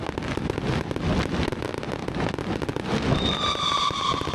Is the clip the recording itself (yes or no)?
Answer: yes